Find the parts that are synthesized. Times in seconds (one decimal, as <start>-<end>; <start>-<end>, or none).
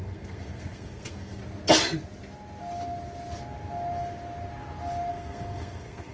0.0-1.4; 5.1-6.1